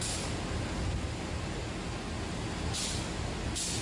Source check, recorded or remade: recorded